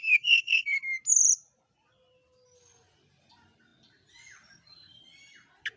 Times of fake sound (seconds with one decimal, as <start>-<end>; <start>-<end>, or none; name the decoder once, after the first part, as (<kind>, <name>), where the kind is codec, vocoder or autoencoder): 0.0-0.8 (codec, SNAC)